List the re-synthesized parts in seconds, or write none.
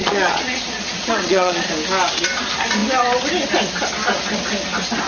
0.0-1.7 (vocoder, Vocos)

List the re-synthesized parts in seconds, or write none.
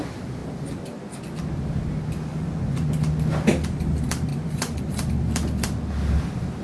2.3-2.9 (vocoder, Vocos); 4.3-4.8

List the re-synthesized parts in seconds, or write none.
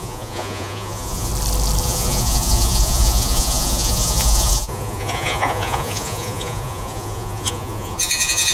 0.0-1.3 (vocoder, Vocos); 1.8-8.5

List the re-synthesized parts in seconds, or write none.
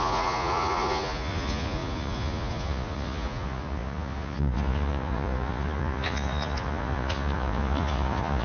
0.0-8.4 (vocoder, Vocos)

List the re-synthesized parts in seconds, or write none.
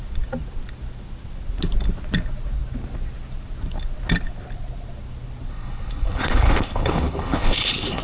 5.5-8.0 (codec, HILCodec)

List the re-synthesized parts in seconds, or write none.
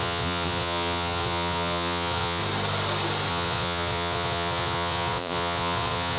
0.0-2.4 (vocoder, Vocos); 3.3-6.2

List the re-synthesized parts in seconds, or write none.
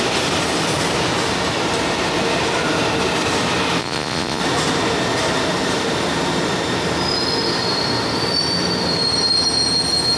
3.8-4.4 (vocoder, Vocos)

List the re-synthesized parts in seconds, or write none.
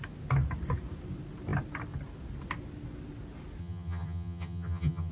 3.6-5.1 (vocoder, HiFi-GAN)